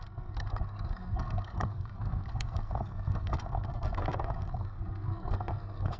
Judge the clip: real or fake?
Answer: fake